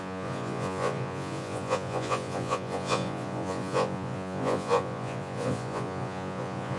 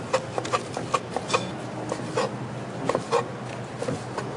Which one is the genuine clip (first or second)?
second